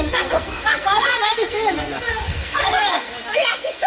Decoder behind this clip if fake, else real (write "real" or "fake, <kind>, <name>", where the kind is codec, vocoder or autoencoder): fake, codec, SNAC